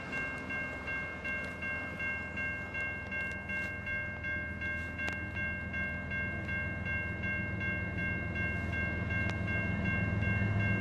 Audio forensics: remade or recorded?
recorded